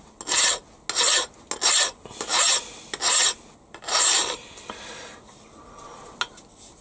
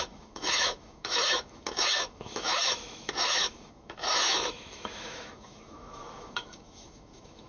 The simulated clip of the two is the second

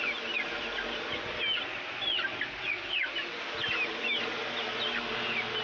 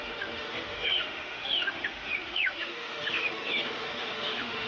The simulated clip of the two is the second